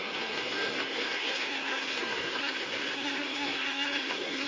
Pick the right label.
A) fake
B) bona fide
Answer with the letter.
A